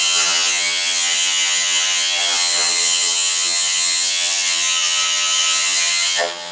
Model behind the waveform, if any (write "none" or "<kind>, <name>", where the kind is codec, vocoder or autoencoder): vocoder, HiFi-GAN